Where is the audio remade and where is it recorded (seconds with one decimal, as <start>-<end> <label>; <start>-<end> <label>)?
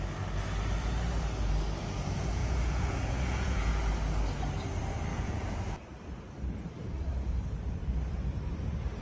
0.0-2.4 recorded; 2.4-3.7 remade; 3.7-5.1 recorded; 5.1-5.6 remade; 5.6-9.0 recorded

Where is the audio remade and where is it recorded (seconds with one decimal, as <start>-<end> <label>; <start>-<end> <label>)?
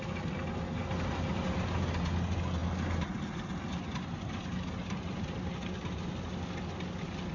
0.0-7.3 recorded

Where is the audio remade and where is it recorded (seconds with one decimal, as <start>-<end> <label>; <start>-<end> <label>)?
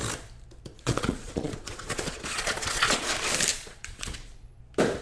0.0-0.7 recorded; 0.7-3.1 remade; 3.1-3.5 recorded; 3.5-4.6 remade; 4.6-5.0 recorded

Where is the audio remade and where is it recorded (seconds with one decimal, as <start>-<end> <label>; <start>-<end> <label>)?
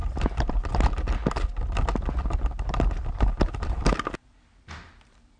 0.0-5.4 recorded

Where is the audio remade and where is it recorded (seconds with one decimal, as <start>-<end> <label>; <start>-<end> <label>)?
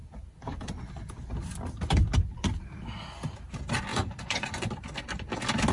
0.0-3.9 recorded; 3.9-4.7 remade; 4.7-5.7 recorded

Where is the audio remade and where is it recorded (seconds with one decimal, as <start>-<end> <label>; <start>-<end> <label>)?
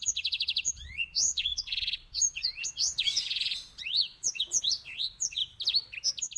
0.0-5.4 remade; 5.4-6.4 recorded